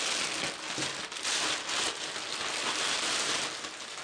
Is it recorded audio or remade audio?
recorded